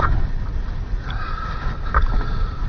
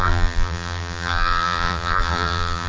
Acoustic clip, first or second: first